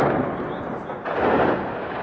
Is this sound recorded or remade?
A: recorded